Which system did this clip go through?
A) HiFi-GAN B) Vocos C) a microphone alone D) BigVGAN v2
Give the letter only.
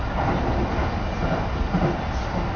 C